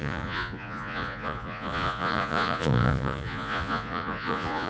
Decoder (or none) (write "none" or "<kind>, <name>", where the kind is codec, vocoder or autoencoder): vocoder, Vocos